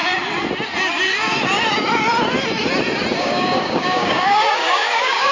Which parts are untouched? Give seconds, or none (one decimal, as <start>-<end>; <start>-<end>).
0.0-3.2